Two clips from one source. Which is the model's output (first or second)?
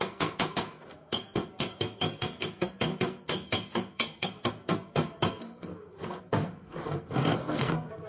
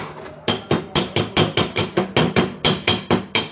first